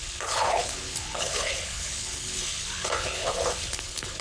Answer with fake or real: fake